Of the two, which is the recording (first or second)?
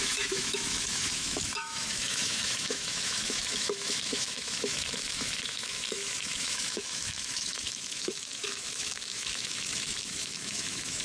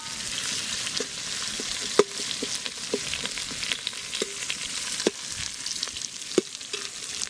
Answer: second